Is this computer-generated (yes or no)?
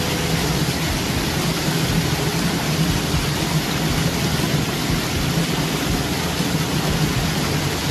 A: no